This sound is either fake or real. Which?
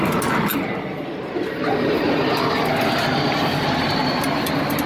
real